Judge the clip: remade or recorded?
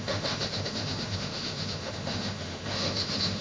remade